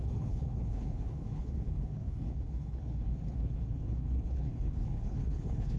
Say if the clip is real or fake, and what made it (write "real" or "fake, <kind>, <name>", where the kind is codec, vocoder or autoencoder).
fake, codec, HILCodec